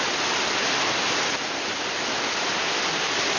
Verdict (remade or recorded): recorded